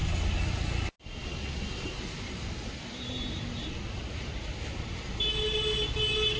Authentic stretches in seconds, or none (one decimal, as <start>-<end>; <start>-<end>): 0.0-6.4